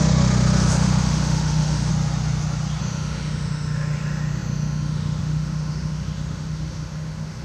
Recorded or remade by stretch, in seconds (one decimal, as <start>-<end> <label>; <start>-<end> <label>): 0.0-1.9 remade; 1.9-2.8 recorded; 2.8-7.4 remade